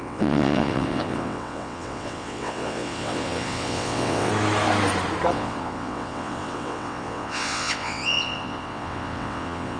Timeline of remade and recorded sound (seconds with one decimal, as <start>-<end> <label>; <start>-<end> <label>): 0.0-4.3 remade; 4.3-5.3 recorded; 5.3-9.8 remade